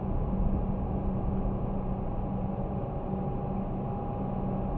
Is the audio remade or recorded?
recorded